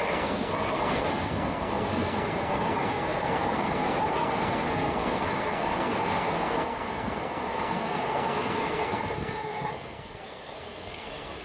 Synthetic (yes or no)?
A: yes